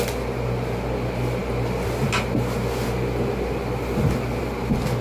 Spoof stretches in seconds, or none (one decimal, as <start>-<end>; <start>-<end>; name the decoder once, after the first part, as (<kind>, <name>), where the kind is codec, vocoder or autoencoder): none